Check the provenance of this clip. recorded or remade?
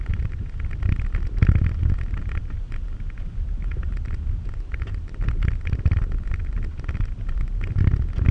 recorded